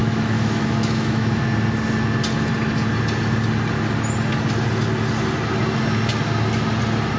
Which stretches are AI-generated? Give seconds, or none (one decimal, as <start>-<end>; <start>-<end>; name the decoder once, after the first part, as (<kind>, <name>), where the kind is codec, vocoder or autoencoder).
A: 0.0-1.4 (autoencoder, DAC-VAE)